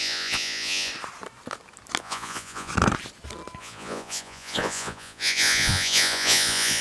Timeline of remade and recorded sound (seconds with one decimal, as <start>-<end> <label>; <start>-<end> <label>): 0.0-0.9 remade; 0.9-2.0 recorded; 2.0-2.7 remade; 2.7-3.6 recorded; 3.6-6.8 remade